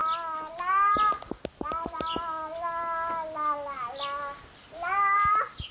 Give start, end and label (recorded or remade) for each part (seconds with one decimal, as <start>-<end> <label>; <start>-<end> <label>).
0.0-5.7 recorded